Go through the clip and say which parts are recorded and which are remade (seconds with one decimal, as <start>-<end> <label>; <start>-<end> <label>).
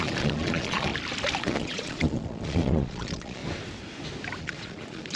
0.0-0.9 remade; 0.9-1.4 recorded; 1.4-3.4 remade; 3.4-4.4 recorded; 4.4-5.2 remade